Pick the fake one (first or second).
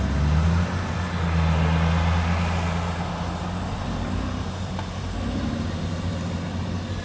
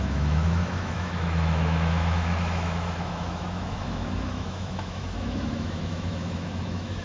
second